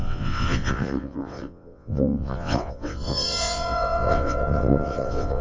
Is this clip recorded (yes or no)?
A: no